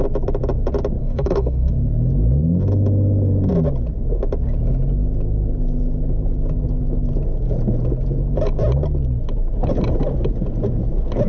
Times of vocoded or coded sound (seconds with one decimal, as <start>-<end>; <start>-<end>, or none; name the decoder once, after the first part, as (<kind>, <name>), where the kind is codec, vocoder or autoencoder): 1.0-1.7 (codec, DAC)